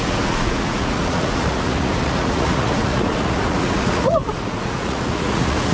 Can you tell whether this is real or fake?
fake